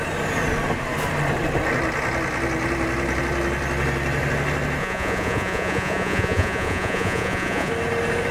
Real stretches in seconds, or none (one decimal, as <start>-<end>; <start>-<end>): 0.0-4.8; 7.7-8.3